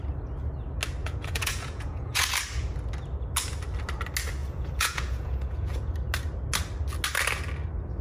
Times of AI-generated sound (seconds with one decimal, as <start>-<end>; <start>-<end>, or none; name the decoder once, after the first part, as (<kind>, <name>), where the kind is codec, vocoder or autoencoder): 1.0-2.3 (vocoder, Vocos); 4.4-5.9